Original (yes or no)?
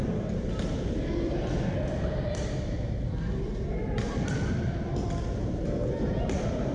no